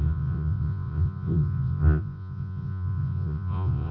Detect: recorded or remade remade